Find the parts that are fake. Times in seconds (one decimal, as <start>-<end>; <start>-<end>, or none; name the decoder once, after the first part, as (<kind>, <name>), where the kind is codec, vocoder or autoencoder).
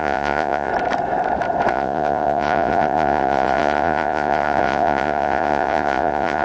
0.0-0.7 (vocoder, Vocos); 1.7-6.4